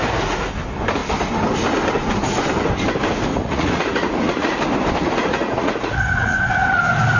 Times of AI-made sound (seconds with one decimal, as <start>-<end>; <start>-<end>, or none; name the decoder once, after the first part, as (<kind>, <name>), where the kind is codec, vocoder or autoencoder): 3.3-4.6 (vocoder, Vocos); 5.0-6.8